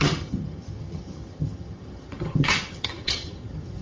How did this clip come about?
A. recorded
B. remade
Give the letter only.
B